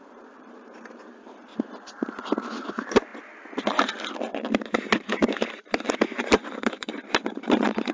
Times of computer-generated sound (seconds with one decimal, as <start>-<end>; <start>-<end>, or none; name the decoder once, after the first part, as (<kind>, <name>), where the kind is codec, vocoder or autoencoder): 0.0-1.5 (vocoder, BigVGAN v2); 2.7-3.1; 4.6-7.9